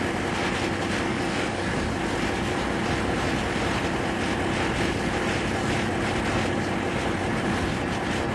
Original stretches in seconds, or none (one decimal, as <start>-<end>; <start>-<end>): 0.0-1.1; 1.9-8.3